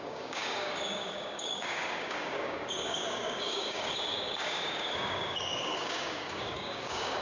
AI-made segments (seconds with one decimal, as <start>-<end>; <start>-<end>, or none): 0.0-7.2